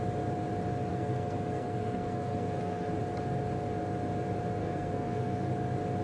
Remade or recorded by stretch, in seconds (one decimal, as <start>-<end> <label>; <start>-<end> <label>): 0.0-0.9 recorded; 0.9-3.0 remade; 3.0-4.6 recorded; 4.6-5.5 remade; 5.5-6.0 recorded